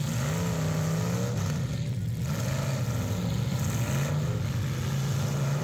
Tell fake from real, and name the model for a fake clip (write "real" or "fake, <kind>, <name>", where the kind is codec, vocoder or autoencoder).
real